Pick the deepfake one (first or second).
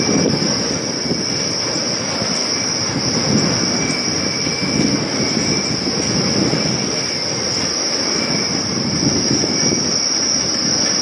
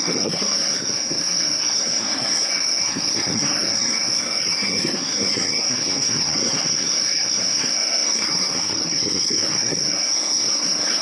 second